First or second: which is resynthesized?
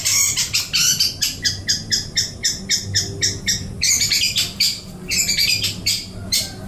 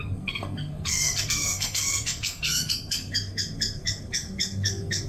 second